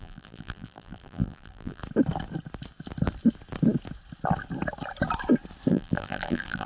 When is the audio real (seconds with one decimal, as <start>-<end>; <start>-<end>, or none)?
1.8-5.7